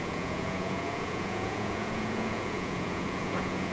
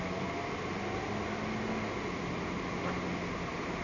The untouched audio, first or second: second